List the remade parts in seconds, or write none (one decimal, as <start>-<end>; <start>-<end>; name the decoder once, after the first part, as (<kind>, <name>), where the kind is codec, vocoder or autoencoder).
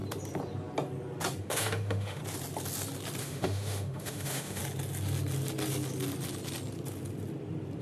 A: 1.4-2.2 (autoencoder, DAC-VAE); 3.2-4.6